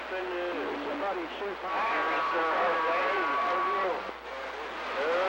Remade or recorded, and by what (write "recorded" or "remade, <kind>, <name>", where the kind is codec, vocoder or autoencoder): recorded